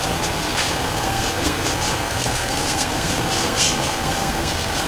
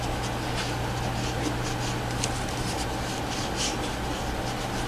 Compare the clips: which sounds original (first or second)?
second